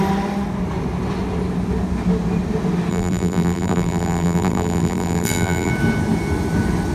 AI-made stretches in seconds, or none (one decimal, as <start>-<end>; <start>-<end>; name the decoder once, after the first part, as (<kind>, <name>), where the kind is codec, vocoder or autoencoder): 2.9-5.7 (vocoder, BigVGAN v2)